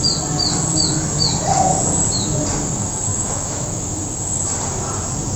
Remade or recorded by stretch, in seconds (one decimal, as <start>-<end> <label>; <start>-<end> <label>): 0.0-3.1 recorded; 3.1-4.0 remade; 4.0-5.4 recorded